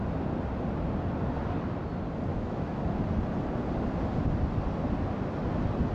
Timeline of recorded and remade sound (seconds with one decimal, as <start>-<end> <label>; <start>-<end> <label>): 0.0-2.3 recorded; 2.3-2.8 remade; 2.8-5.9 recorded